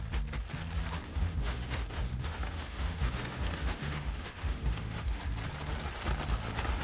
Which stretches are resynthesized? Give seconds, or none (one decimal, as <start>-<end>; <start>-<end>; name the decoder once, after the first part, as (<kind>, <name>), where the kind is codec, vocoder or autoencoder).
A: 1.1-5.2 (autoencoder, DAC-VAE)